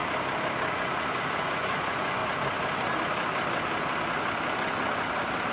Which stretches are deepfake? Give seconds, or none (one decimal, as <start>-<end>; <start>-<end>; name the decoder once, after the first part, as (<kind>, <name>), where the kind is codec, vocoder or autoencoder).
0.7-2.2 (vocoder, Vocos)